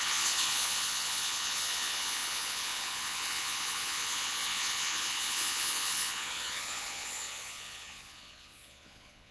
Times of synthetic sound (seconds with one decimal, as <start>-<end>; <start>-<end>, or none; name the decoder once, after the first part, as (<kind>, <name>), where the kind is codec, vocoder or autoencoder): 0.0-9.3 (vocoder, Vocos)